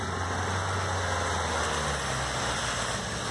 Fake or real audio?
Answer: real